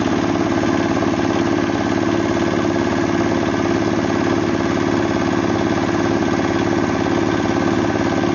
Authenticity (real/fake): real